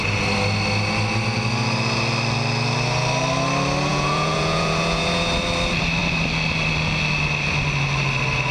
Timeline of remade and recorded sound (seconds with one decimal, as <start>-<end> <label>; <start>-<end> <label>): 0.0-3.9 recorded; 3.9-5.3 remade; 5.3-8.5 recorded